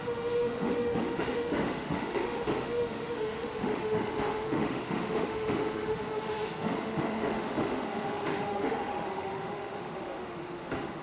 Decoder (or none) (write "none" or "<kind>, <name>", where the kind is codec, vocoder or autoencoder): autoencoder, DAC-VAE